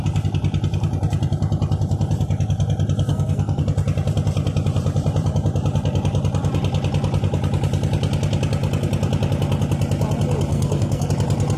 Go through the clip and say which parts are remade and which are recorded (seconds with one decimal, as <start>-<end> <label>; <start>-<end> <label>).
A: 0.0-3.1 recorded; 3.1-3.6 remade; 3.6-10.5 recorded; 10.5-11.1 remade; 11.1-11.6 recorded